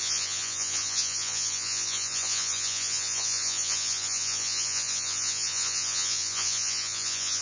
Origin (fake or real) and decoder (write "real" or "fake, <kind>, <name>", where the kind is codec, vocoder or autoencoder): fake, vocoder, Vocos